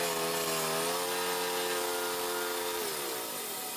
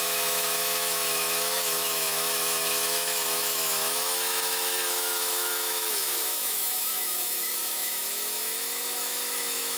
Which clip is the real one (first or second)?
first